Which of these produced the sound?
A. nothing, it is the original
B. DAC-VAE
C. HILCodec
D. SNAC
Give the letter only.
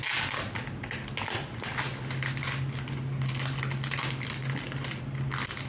A